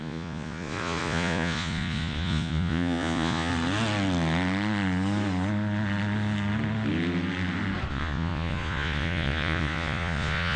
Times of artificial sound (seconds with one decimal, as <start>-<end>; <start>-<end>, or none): 0.0-3.5; 7.9-10.6